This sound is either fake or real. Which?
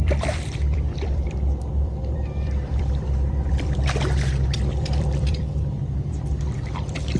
fake